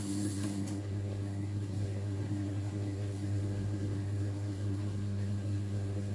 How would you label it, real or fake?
fake